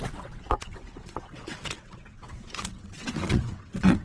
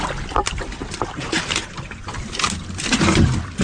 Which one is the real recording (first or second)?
second